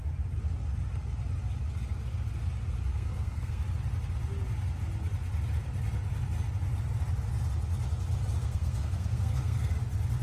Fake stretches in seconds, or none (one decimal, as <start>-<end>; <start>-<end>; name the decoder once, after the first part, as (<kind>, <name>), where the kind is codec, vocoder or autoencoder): 2.9-3.6 (codec, SNAC); 8.4-9.7